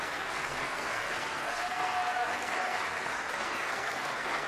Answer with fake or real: fake